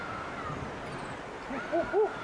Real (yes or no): yes